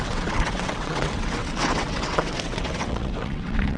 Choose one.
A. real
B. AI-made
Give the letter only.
B